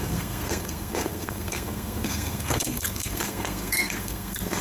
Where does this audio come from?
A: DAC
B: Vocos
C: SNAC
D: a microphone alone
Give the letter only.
C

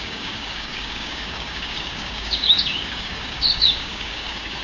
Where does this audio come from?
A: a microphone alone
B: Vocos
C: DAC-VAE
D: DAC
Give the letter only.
D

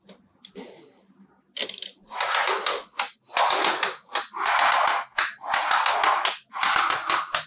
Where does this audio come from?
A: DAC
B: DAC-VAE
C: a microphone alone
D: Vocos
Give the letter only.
C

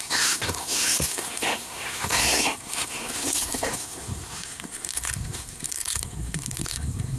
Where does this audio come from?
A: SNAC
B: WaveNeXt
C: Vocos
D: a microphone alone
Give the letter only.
A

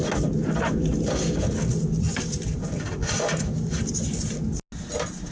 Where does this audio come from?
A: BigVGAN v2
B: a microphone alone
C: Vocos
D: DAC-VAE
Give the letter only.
B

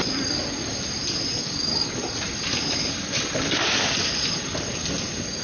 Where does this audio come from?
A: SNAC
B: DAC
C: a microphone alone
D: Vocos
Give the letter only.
C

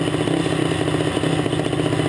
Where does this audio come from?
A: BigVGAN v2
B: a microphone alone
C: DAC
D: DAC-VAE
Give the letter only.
B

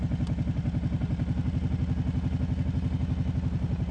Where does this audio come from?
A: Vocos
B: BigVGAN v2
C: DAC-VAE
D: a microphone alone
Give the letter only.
D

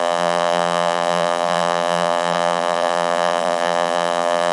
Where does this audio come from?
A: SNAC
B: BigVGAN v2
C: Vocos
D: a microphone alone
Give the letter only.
B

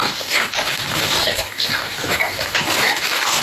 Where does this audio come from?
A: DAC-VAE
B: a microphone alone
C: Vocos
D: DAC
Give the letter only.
D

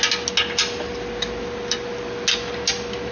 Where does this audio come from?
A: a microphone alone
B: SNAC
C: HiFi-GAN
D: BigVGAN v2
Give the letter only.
A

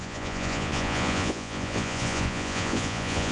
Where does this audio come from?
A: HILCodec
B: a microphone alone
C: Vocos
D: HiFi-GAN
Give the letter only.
C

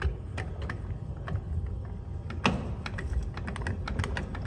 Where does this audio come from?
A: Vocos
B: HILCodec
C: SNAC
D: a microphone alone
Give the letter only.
D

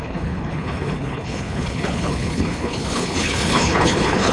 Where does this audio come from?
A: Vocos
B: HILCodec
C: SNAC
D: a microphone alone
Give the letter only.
B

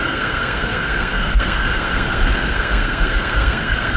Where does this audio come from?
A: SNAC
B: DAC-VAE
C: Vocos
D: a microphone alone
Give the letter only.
A